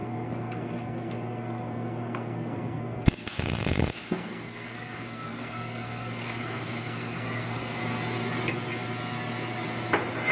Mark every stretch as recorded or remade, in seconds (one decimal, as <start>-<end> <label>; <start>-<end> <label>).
0.0-7.8 remade; 7.8-10.3 recorded